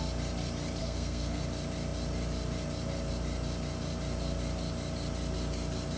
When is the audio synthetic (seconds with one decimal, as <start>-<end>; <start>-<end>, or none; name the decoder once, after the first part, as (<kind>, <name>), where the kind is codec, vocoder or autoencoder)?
0.8-1.4 (codec, SNAC)

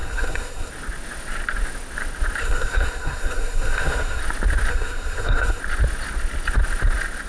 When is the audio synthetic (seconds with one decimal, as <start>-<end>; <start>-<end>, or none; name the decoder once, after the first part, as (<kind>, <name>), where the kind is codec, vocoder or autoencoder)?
0.0-0.7 (codec, SNAC); 2.4-4.2; 4.7-5.6

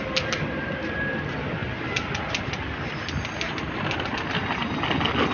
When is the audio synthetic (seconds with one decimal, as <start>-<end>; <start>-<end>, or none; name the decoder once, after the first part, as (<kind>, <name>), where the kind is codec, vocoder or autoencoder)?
none